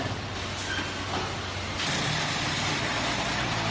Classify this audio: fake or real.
real